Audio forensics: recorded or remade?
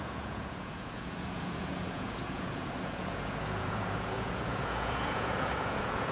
remade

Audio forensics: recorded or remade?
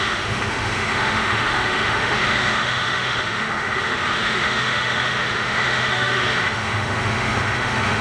remade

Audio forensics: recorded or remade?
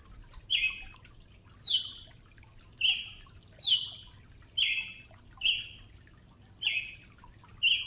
recorded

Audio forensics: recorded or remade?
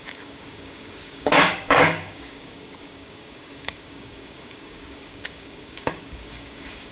remade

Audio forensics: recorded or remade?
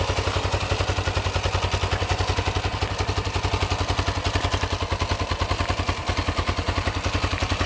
recorded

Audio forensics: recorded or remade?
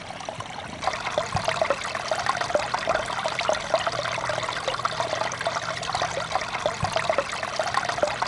recorded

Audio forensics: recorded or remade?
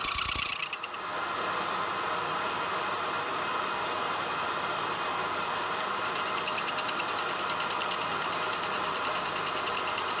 remade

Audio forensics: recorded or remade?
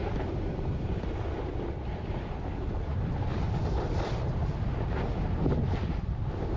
recorded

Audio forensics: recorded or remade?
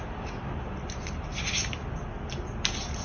recorded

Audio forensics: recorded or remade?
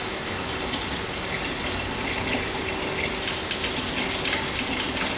recorded